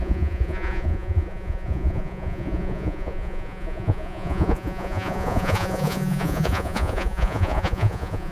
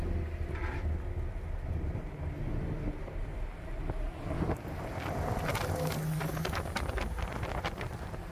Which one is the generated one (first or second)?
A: first